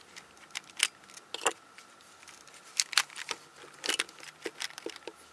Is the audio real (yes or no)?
yes